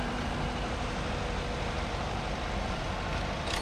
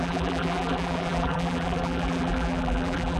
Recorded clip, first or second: first